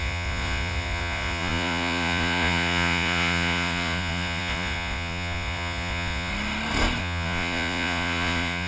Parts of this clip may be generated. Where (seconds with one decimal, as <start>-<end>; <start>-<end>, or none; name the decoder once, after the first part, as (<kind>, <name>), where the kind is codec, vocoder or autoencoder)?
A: 0.0-6.3 (vocoder, Vocos); 7.0-8.7